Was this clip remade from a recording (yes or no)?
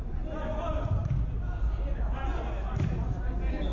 no